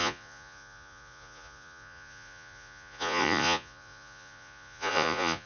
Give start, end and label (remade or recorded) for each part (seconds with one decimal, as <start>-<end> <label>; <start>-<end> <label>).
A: 0.0-5.5 remade